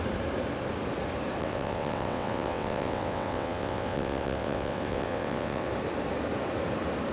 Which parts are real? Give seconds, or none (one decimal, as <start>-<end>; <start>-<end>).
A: 0.0-1.4; 5.7-7.1